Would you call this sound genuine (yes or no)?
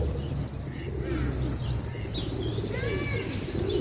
yes